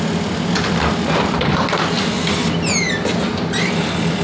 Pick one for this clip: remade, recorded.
recorded